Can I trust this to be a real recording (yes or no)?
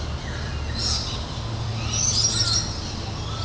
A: yes